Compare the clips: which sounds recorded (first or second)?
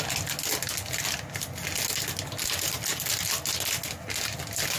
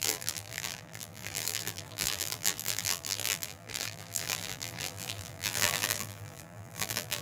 first